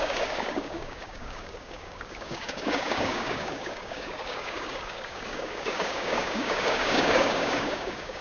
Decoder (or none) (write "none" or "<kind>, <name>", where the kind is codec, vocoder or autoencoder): codec, DAC